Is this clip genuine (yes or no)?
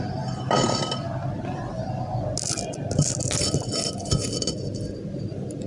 yes